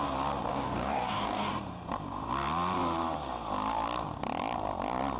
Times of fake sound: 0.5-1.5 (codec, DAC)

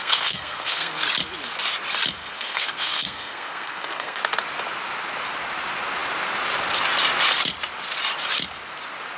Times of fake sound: 0.0-1.0 (codec, SNAC); 2.2-4.2

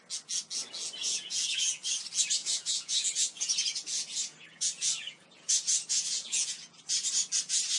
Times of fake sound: 1.0-1.9 (vocoder, Vocos); 2.4-6.8